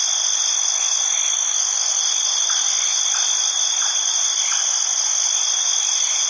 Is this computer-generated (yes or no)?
no